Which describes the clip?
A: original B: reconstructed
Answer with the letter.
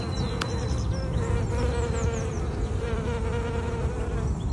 A